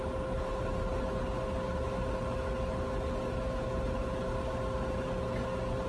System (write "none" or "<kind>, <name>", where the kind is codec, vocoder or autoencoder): none